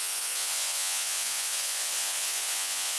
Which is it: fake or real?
fake